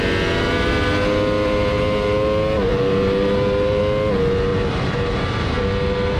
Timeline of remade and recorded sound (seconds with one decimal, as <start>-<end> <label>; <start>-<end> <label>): 0.0-2.7 recorded; 2.7-3.8 remade; 3.8-4.5 recorded; 4.5-6.2 remade